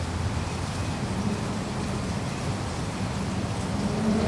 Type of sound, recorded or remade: recorded